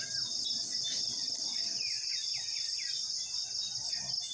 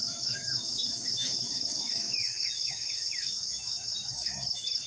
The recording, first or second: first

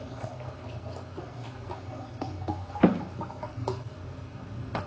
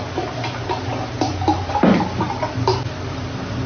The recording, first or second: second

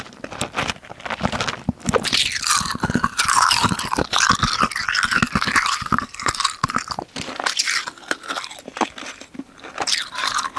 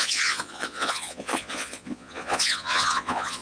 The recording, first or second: first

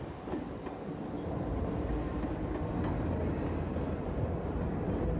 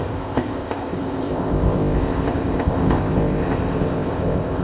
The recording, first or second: first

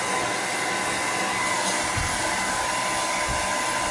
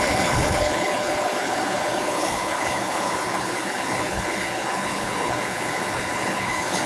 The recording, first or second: first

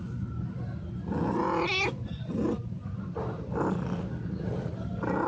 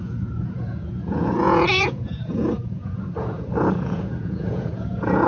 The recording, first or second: first